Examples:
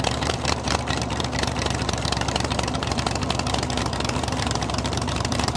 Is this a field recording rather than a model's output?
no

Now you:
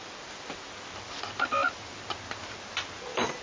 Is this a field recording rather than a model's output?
no